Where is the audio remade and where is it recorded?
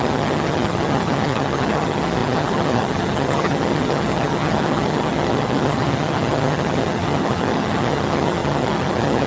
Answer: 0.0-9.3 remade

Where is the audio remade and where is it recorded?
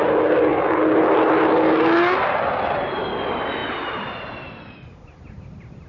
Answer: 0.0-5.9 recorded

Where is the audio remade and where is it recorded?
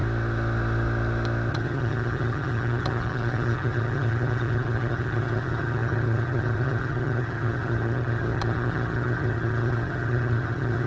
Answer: 0.0-1.5 recorded; 1.5-10.9 remade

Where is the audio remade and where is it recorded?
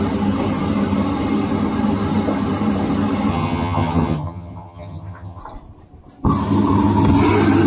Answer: 0.0-3.3 recorded; 3.3-5.4 remade; 5.4-7.7 recorded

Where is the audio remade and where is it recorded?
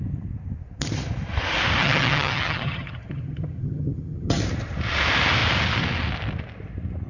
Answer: 0.0-1.8 recorded; 1.8-4.4 remade; 4.4-7.1 recorded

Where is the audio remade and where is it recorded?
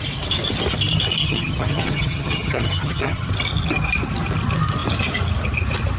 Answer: 0.0-1.2 recorded; 1.2-3.3 remade; 3.3-6.0 recorded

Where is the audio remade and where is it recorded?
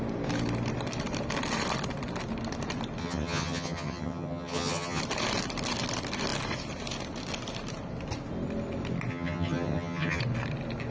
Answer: 0.0-3.0 recorded; 3.0-5.0 remade; 5.0-9.1 recorded; 9.1-10.2 remade; 10.2-10.9 recorded